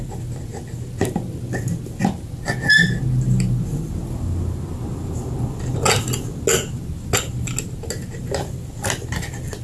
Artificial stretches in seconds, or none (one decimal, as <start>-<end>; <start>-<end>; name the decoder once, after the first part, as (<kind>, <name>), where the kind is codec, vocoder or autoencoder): none